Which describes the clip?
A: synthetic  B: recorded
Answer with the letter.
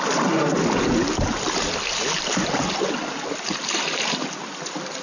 B